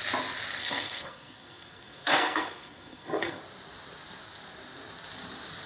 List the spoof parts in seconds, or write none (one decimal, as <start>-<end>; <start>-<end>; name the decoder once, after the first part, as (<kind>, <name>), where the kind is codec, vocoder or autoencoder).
0.6-3.4 (codec, SNAC)